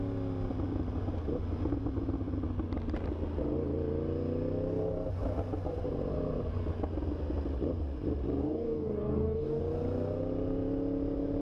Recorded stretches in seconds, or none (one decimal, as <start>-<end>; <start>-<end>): 0.0-8.4; 9.6-11.4